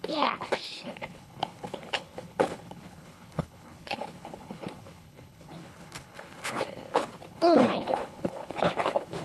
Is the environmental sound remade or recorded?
remade